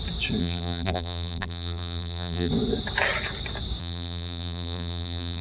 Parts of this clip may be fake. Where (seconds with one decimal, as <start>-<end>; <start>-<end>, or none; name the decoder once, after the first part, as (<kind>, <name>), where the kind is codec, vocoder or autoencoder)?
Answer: 0.4-2.5 (vocoder, BigVGAN v2); 3.8-5.4